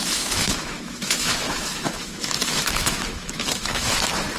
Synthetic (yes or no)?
yes